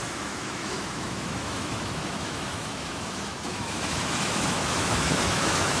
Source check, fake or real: fake